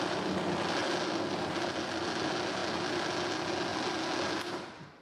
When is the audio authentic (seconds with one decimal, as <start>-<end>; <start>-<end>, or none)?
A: 0.0-5.0

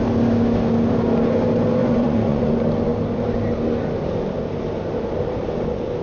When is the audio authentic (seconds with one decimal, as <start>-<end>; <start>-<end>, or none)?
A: 0.0-1.8; 2.5-6.0